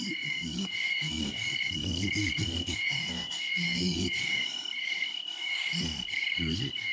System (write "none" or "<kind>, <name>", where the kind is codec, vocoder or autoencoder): codec, DAC